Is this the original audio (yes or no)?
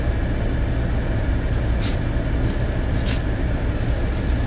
yes